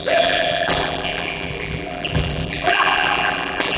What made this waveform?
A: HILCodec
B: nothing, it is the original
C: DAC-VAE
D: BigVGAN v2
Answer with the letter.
D